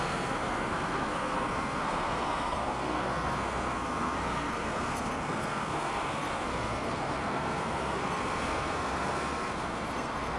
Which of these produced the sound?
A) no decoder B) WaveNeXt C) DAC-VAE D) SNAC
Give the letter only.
D